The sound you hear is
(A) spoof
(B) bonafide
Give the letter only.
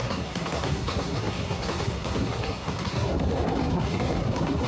A